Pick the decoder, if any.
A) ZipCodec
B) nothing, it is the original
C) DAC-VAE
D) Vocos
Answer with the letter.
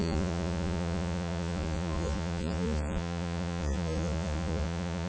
D